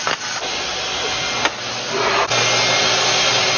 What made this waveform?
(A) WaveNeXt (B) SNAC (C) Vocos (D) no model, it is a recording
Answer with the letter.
D